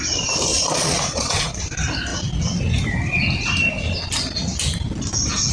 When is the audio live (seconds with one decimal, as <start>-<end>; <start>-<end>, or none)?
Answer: 0.0-0.5; 1.6-5.5